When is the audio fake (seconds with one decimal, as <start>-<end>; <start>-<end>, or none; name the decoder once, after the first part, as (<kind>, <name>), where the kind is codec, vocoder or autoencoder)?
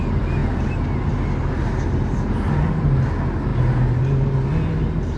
none